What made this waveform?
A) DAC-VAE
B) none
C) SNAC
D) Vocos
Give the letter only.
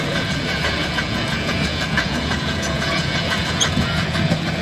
D